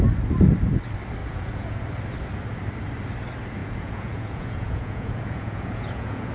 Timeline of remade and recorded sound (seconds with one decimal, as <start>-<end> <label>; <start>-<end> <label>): 0.0-1.2 recorded; 1.2-1.8 remade; 1.8-3.6 recorded; 3.6-6.3 remade